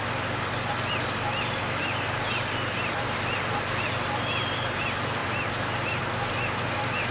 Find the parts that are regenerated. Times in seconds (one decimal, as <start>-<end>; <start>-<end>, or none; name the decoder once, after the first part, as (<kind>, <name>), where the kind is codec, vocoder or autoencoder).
none